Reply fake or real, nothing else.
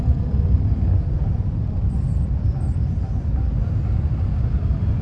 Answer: real